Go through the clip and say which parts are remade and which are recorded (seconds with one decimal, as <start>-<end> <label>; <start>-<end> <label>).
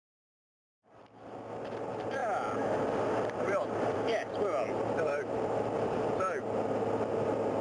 0.0-2.2 recorded; 2.2-6.2 remade; 6.2-7.6 recorded